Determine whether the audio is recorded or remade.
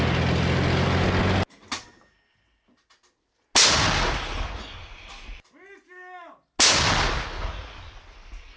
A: recorded